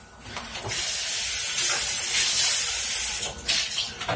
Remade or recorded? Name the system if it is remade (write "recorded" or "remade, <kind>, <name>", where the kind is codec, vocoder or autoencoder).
recorded